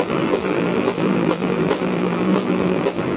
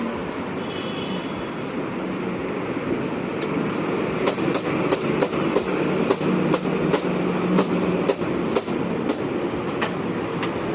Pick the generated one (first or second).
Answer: first